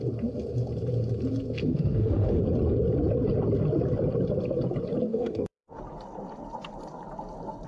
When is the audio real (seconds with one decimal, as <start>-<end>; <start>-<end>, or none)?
0.0-1.6; 2.4-5.1; 5.8-7.7